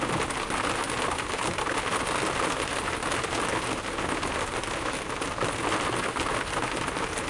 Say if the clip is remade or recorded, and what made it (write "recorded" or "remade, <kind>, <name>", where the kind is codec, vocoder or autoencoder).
recorded